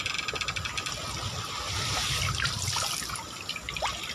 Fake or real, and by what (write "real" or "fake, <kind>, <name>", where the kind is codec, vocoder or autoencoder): real